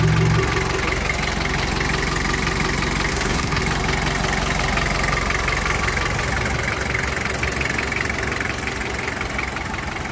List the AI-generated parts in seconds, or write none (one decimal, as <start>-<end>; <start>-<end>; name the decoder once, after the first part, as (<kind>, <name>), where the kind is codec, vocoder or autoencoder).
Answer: 3.1-3.6 (codec, SNAC)

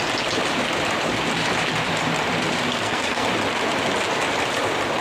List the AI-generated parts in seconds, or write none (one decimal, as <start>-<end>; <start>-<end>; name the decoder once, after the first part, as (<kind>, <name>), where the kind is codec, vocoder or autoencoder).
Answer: 2.7-3.3 (codec, SNAC)

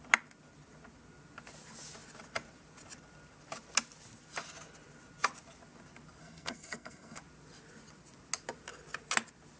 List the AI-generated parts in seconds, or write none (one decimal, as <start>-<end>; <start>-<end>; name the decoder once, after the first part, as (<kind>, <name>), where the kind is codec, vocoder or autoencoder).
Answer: 6.2-7.2 (codec, SNAC)

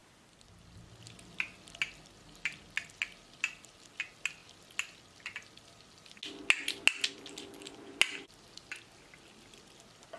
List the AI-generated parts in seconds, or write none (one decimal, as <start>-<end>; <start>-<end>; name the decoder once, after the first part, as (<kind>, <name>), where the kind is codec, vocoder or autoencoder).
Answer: none

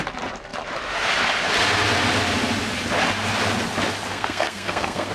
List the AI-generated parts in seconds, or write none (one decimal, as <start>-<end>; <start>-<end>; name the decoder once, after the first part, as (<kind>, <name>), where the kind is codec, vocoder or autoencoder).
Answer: 4.1-5.1 (codec, SNAC)

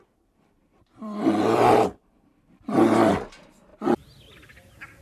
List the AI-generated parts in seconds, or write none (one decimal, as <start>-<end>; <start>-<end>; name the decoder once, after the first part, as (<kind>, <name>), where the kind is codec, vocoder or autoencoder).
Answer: 0.6-3.1 (vocoder, BigVGAN v2)

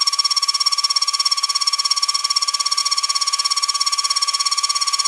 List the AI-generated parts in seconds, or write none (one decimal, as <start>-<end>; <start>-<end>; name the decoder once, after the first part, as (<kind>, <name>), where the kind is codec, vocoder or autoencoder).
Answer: 0.0-2.2 (vocoder, Vocos); 2.8-5.1

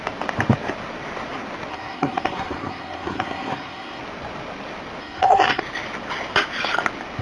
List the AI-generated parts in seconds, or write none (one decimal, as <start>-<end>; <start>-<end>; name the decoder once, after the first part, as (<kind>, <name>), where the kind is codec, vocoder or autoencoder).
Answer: 1.7-4.0 (codec, SNAC); 5.0-5.6